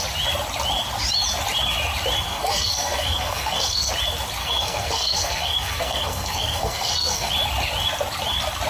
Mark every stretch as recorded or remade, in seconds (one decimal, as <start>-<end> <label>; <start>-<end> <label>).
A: 0.0-2.3 recorded; 2.3-3.9 remade; 3.9-4.4 recorded; 4.4-7.3 remade; 7.3-8.7 recorded